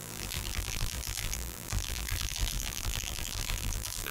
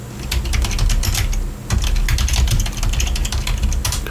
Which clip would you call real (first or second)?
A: second